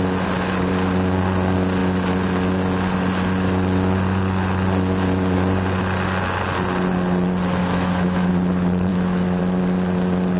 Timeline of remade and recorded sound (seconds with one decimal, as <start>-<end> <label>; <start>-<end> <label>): 0.0-7.6 recorded; 7.6-8.3 remade; 8.3-8.9 recorded; 8.9-9.4 remade; 9.4-10.4 recorded